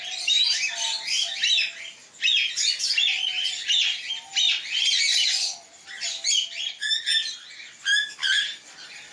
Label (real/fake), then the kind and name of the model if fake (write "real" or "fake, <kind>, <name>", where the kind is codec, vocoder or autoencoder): real